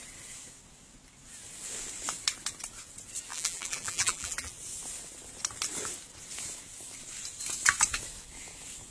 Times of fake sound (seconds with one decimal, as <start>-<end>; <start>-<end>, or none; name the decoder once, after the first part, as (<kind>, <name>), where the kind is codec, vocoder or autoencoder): 3.3-4.5 (vocoder, BigVGAN v2)

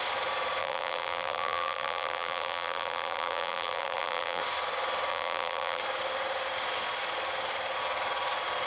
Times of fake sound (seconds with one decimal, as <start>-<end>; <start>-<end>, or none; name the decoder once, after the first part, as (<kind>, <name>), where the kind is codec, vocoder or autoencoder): 0.6-4.4 (vocoder, BigVGAN v2); 5.1-5.8

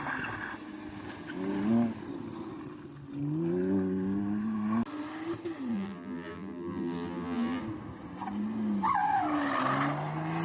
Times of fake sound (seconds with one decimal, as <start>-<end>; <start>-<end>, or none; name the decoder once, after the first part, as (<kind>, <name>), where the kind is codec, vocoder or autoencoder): 5.7-7.6 (vocoder, BigVGAN v2)

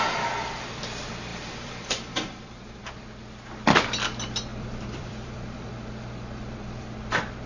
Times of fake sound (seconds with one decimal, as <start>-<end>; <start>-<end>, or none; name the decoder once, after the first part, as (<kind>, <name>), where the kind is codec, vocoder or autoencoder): 1.3-2.9 (vocoder, BigVGAN v2); 4.5-7.1

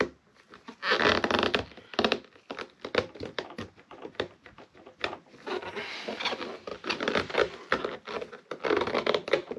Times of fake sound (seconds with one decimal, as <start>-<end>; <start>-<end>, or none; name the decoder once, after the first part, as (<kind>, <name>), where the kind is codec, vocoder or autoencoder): 6.7-7.3 (vocoder, BigVGAN v2)

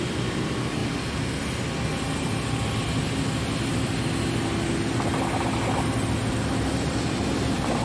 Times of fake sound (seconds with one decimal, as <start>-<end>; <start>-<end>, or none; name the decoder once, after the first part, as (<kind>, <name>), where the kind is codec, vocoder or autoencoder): 6.2-7.8 (vocoder, BigVGAN v2)

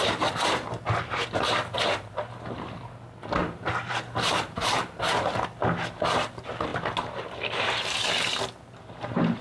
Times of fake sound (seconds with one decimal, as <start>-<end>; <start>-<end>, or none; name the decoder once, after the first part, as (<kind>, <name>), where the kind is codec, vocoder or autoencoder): 3.4-4.8 (vocoder, BigVGAN v2)